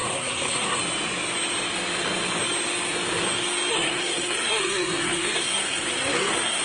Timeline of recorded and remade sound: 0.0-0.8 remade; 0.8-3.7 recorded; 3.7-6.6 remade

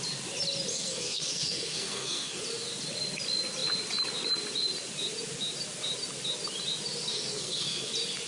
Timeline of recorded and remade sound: 0.0-0.7 recorded; 0.7-2.4 remade; 2.4-7.1 recorded; 7.1-7.9 remade; 7.9-8.3 recorded